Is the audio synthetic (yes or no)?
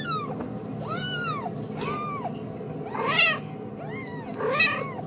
no